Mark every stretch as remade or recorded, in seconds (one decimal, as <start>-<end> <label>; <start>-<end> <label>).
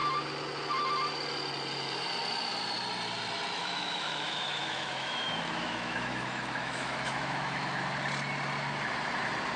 0.0-3.6 recorded; 3.6-7.8 remade; 7.8-9.6 recorded